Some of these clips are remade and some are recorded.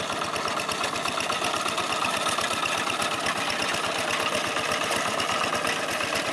recorded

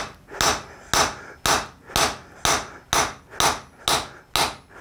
recorded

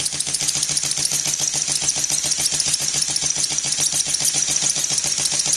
recorded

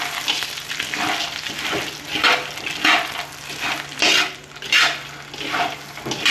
recorded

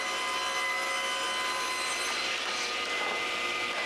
remade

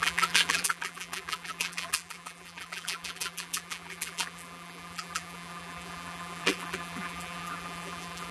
remade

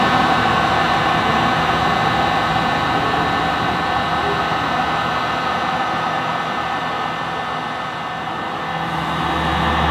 recorded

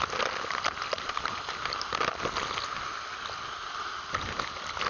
recorded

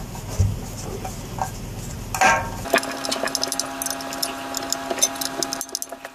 recorded